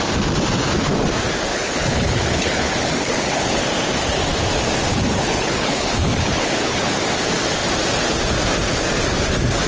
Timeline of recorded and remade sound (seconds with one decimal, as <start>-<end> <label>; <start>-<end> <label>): 0.0-1.5 recorded; 1.5-3.6 remade; 3.6-4.9 recorded; 4.9-6.9 remade; 6.9-9.7 recorded